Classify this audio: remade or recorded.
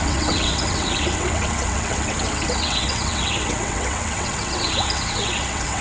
remade